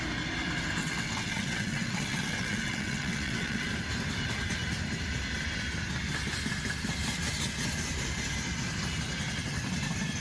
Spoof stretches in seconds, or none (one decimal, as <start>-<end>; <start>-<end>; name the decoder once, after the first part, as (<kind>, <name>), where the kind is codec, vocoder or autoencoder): 0.8-3.7 (vocoder, WaveNeXt)